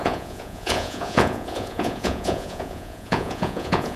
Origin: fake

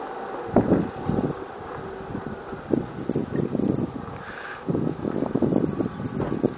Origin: real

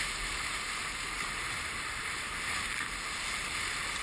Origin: real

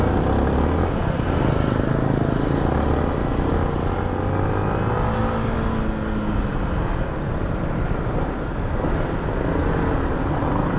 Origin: real